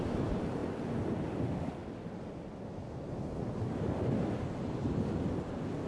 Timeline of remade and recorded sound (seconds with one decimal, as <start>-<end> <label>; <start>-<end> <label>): 0.0-5.9 recorded